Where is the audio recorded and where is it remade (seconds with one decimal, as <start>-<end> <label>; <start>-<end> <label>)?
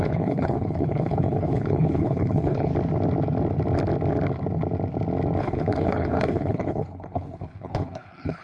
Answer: 0.0-2.7 remade; 2.7-5.4 recorded; 5.4-8.4 remade